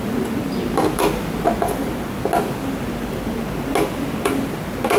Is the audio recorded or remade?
recorded